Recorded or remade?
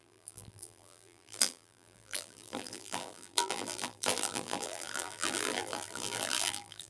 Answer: remade